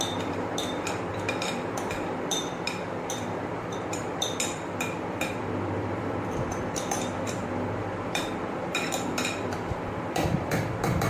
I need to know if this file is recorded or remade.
remade